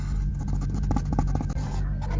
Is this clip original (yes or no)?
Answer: yes